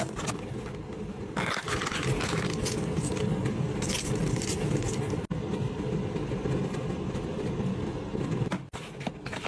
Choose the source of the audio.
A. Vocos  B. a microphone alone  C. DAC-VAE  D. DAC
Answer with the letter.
B